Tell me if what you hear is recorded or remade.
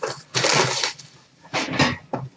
recorded